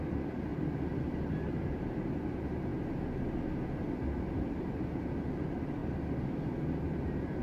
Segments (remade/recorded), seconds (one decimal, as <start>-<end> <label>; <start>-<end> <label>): 0.0-7.4 recorded

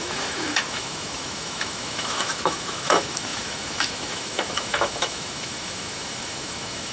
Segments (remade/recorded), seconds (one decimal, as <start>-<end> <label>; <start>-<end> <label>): 0.0-6.9 remade

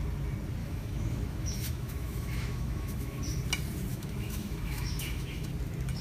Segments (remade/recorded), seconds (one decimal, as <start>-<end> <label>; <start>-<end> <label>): 0.0-0.6 recorded; 0.6-3.2 remade; 3.2-3.9 recorded; 3.9-5.5 remade; 5.5-6.0 recorded

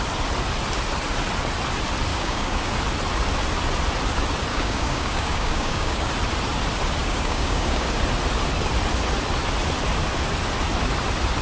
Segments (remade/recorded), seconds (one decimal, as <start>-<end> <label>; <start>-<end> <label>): 0.0-2.1 recorded; 2.1-2.7 remade; 2.7-4.5 recorded; 4.5-6.1 remade; 6.1-7.0 recorded; 7.0-8.0 remade; 8.0-11.4 recorded

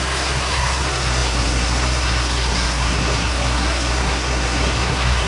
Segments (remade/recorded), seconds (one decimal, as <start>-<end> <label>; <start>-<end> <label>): 0.0-5.3 remade

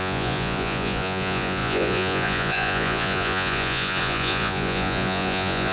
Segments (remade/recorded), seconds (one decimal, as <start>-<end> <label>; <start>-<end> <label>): 0.0-5.7 remade

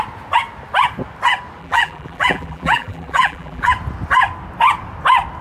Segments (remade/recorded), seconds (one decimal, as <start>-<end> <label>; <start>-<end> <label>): 0.0-1.6 recorded; 1.6-3.7 remade; 3.7-5.4 recorded

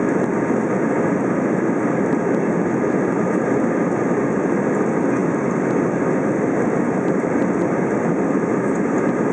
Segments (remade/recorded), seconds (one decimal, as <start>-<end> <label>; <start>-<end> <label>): 0.0-9.3 recorded